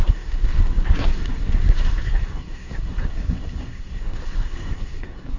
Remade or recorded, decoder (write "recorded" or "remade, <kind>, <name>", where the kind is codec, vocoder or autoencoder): remade, codec, SNAC